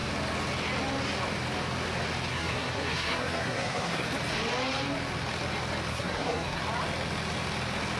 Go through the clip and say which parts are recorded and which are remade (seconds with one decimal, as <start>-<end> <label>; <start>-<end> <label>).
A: 0.0-2.3 recorded; 2.3-4.0 remade; 4.0-5.9 recorded; 5.9-6.6 remade; 6.6-8.0 recorded